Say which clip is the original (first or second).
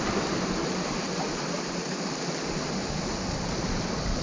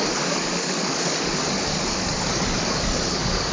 first